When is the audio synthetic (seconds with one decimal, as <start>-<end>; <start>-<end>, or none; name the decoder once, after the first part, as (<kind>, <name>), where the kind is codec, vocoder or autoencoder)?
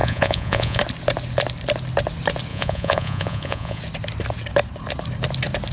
0.0-0.8 (vocoder, Vocos); 2.5-3.8